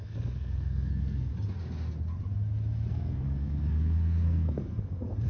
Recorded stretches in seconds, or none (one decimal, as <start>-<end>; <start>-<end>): 1.3-2.9